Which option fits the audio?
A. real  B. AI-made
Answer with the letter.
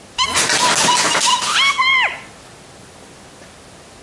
A